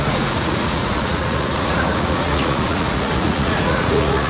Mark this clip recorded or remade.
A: remade